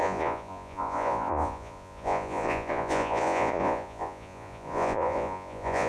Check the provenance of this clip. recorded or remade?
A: remade